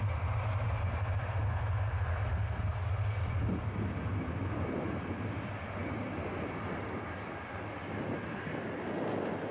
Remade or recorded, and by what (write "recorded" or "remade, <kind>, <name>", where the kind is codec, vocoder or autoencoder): recorded